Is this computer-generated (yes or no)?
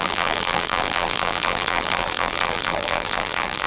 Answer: yes